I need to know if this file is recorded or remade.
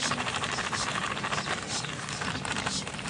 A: recorded